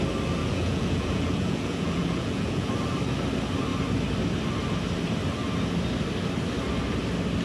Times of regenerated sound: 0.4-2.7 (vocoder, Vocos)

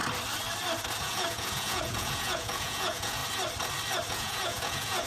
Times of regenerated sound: 1.0-3.2 (vocoder, Vocos); 4.1-5.1

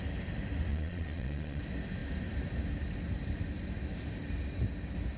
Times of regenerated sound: 0.7-1.6 (vocoder, Vocos)

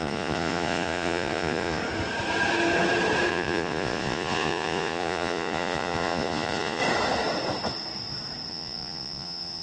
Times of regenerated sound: 0.0-1.8 (vocoder, Vocos); 3.3-6.8; 8.5-9.6